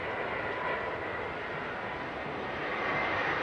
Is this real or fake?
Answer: real